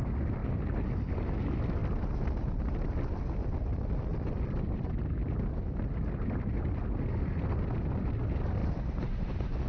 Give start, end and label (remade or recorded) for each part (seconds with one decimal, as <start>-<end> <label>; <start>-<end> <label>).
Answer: 0.0-4.1 recorded; 4.1-6.6 remade; 6.6-8.6 recorded; 8.6-9.7 remade